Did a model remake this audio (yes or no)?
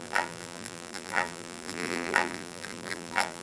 yes